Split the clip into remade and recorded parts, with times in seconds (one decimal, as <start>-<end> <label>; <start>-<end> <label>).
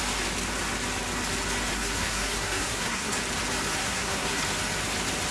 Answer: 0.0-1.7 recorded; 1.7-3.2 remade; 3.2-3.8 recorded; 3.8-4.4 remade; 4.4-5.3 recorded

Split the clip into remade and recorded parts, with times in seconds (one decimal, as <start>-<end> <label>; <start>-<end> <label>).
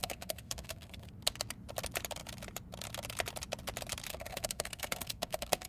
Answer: 0.0-1.1 remade; 1.1-4.1 recorded; 4.1-5.7 remade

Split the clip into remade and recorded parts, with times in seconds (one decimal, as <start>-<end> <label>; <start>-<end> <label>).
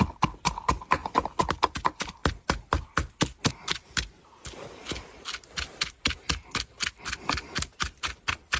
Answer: 0.0-8.6 recorded